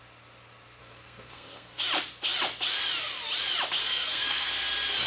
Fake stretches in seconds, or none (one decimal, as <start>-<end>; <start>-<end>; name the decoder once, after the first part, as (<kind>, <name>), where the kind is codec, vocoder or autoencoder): 0.8-1.8 (codec, SNAC); 3.8-4.5